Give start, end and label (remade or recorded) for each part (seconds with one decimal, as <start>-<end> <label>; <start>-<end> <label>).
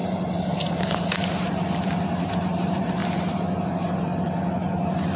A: 0.0-4.1 remade; 4.1-5.2 recorded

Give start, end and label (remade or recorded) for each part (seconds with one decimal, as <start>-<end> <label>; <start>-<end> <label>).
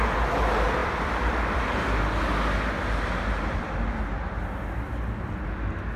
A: 0.0-0.8 recorded; 0.8-1.6 remade; 1.6-6.0 recorded